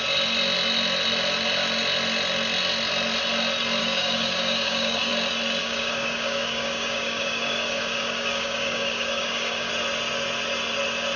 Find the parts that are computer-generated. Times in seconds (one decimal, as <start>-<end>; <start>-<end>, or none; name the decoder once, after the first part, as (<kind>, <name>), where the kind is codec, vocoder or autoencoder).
3.8-5.1 (codec, DAC); 5.6-9.7